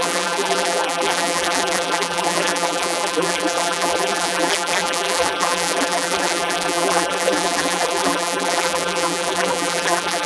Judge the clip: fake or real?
fake